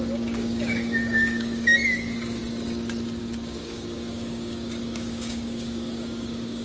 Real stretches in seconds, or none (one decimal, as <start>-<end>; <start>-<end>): 2.4-3.2